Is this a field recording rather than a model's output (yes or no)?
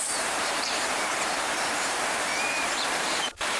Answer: no